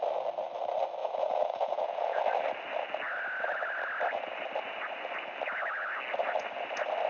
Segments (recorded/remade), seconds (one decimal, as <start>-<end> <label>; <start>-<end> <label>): 0.0-1.0 recorded; 1.0-2.2 remade; 2.2-7.1 recorded